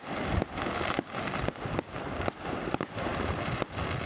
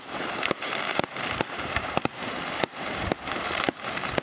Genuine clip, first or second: first